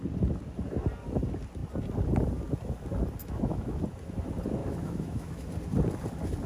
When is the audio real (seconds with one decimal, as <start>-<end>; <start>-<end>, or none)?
0.0-3.2; 3.8-4.6; 5.5-6.5